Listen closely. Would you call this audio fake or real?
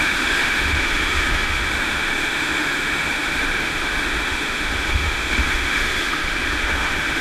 fake